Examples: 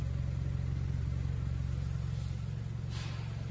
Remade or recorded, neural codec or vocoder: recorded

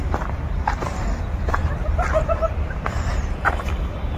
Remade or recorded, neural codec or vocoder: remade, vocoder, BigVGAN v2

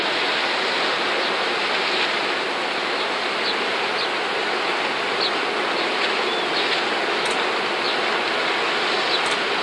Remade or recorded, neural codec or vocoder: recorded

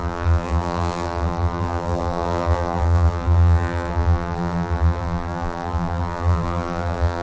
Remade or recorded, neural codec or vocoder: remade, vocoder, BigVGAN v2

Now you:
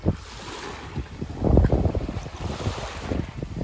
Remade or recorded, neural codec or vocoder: recorded